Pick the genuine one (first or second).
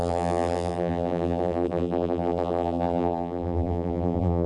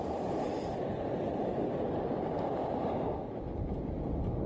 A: second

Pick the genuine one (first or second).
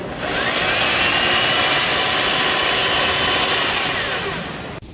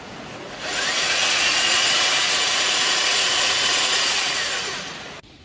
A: first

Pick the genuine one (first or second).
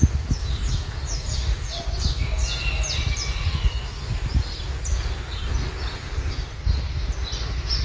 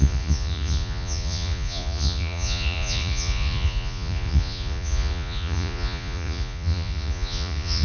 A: first